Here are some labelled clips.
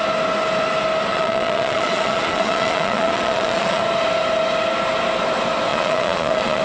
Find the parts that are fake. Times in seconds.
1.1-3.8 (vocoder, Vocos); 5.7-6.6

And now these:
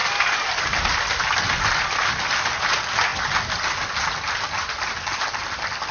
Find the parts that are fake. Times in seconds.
none

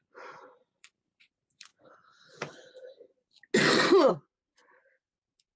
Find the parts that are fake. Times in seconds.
0.0-1.7 (vocoder, BigVGAN v2); 4.1-5.6